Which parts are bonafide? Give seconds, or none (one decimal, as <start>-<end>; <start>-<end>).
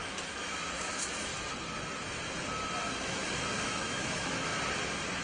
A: 1.3-3.0; 4.5-5.2